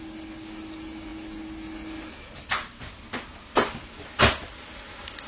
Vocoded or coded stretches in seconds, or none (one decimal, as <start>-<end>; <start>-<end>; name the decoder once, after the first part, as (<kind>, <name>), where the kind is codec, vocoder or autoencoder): none